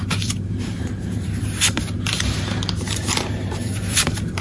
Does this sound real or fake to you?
fake